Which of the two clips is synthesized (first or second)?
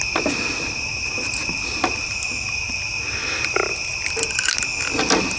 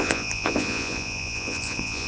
second